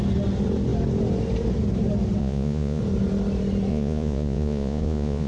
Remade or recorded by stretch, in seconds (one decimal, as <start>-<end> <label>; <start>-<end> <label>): 0.0-2.2 recorded; 2.2-2.8 remade; 2.8-3.7 recorded; 3.7-5.3 remade